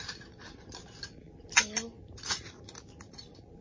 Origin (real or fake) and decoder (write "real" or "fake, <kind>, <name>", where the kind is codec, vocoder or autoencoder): real